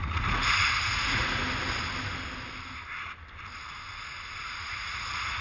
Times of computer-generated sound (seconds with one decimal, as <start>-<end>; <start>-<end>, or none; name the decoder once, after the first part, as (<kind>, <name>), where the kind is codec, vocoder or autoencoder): 0.0-1.4 (vocoder, Vocos); 4.4-5.4